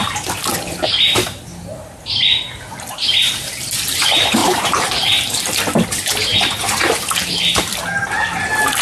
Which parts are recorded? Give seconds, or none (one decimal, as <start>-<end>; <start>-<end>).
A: 0.0-0.5; 1.4-4.4; 5.6-6.3; 7.3-8.8